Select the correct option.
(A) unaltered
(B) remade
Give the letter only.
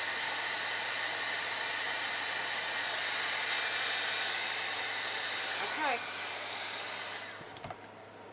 B